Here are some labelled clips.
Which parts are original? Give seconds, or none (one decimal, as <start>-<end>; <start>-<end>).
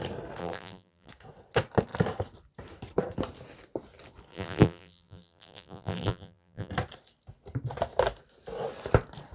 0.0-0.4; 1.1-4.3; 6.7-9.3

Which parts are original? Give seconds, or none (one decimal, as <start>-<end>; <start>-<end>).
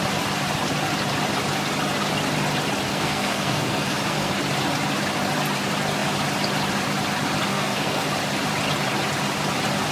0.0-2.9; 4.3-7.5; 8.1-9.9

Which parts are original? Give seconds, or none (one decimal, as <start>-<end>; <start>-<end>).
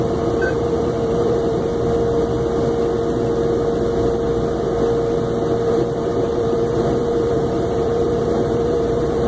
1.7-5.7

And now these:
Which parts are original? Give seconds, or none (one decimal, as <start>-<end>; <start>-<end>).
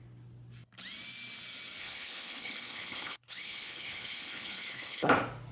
0.0-1.8; 5.1-5.5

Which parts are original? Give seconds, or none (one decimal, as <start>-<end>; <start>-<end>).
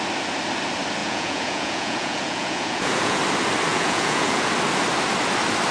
0.0-1.0; 3.2-3.7; 4.5-5.7